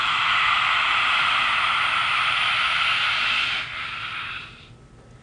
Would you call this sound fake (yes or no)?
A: no